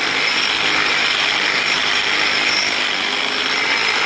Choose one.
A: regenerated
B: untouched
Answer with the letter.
B